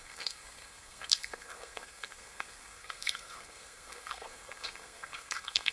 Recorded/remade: remade